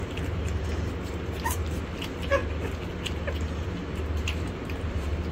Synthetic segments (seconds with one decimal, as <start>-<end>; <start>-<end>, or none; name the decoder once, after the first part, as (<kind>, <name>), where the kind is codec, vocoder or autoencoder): 0.0-2.4 (vocoder, BigVGAN v2); 4.2-5.3